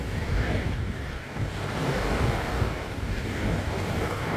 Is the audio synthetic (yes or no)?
yes